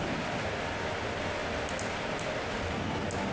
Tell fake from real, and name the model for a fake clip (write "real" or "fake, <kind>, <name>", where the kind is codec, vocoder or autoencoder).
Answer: real